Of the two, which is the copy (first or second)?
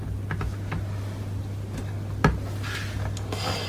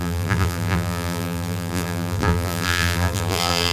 second